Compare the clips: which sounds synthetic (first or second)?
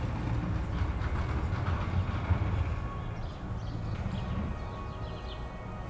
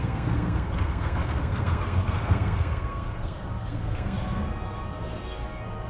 second